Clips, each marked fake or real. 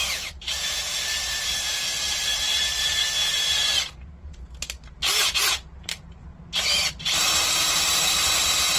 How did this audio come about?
fake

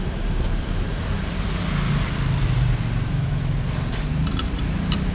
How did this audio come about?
fake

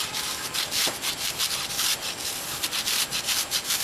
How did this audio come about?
fake